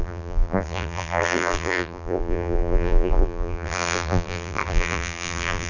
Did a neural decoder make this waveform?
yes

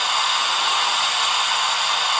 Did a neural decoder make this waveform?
no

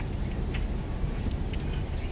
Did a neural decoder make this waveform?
no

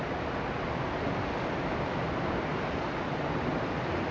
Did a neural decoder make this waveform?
no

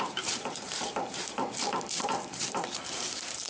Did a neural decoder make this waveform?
yes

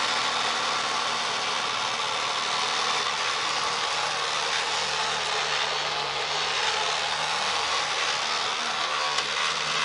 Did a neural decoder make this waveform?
no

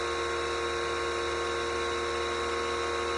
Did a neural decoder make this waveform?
no